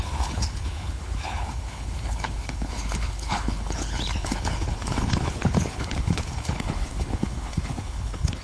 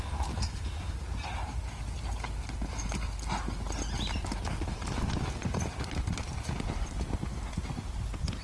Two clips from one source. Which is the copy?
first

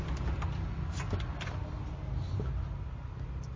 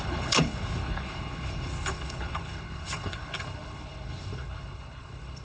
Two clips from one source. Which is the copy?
second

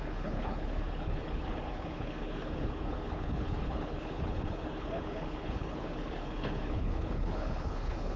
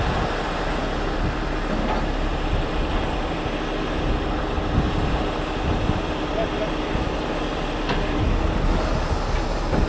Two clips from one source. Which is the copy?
first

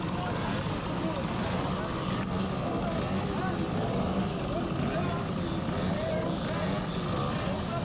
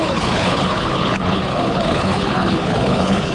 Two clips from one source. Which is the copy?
second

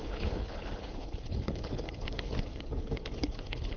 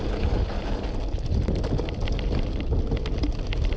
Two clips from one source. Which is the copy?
first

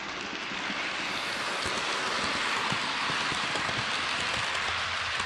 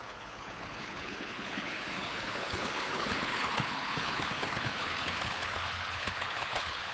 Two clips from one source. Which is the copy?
second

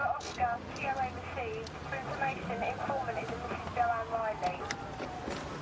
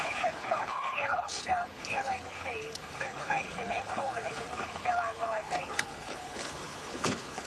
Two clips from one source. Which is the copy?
second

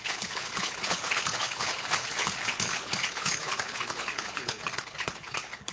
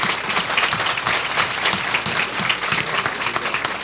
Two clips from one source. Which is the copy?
first